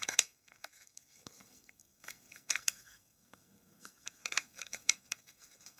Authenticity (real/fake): fake